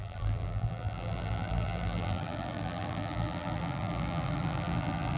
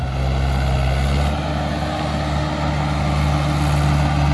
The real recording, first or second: second